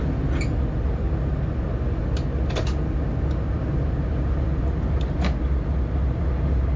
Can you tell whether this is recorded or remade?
recorded